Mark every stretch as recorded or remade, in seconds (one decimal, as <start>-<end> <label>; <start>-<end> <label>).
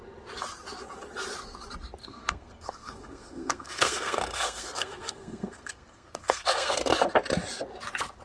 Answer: 0.0-2.0 recorded; 2.0-6.8 remade; 6.8-8.2 recorded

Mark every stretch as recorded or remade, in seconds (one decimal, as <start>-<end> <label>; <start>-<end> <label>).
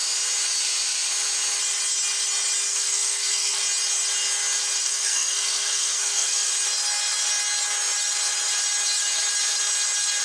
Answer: 0.0-2.7 recorded; 2.7-3.6 remade; 3.6-4.8 recorded; 4.8-6.5 remade; 6.5-10.2 recorded